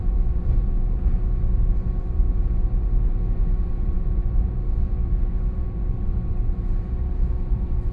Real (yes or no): no